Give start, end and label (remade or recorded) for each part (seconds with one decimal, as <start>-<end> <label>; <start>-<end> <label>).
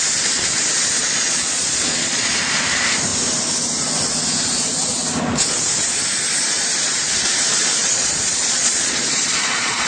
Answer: 0.0-1.0 recorded; 1.0-2.3 remade; 2.3-7.8 recorded; 7.8-9.9 remade